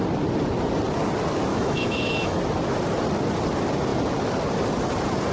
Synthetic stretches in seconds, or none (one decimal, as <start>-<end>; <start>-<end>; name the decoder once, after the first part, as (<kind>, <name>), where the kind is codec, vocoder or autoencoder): 1.5-2.4 (autoencoder, DAC-VAE)